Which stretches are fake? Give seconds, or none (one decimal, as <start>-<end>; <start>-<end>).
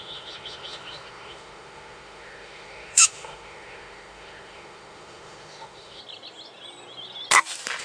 0.0-6.0